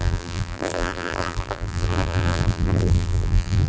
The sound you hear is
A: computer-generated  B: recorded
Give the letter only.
A